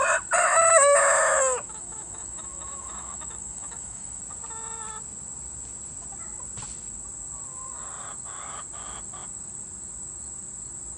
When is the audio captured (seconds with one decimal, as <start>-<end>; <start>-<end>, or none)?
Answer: 0.0-0.4; 4.2-11.0